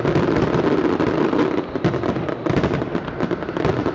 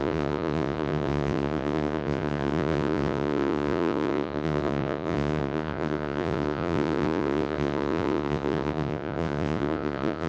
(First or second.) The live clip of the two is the first